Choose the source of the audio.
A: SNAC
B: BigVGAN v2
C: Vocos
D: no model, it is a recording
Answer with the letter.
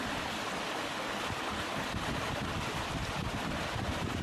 B